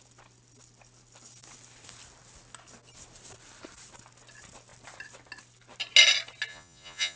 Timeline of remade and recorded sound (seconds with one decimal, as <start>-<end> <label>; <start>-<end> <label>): 0.0-6.5 recorded; 6.5-7.2 remade